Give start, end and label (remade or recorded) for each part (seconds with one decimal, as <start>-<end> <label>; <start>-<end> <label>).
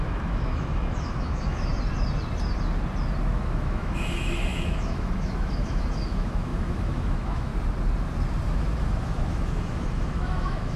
0.0-1.7 remade; 1.7-3.3 recorded; 3.3-7.5 remade; 7.5-8.5 recorded; 8.5-10.8 remade